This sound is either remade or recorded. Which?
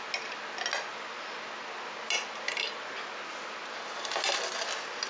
recorded